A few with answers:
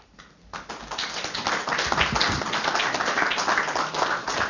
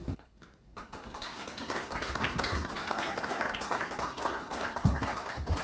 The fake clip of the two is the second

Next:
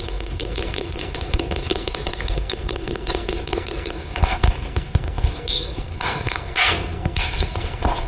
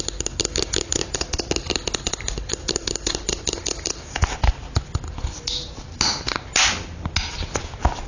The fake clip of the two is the first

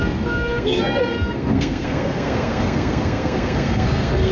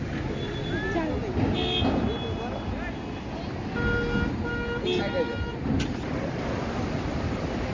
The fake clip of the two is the first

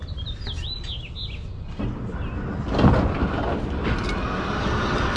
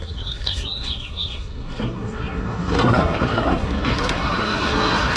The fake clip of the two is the second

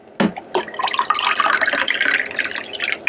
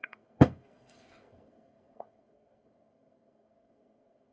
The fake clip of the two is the second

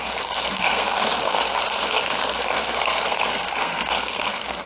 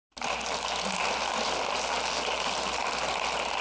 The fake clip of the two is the first